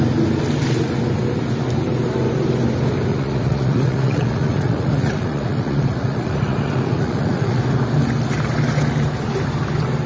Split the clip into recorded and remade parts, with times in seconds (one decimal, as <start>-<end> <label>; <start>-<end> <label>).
0.0-3.1 recorded; 3.1-7.6 remade; 7.6-10.1 recorded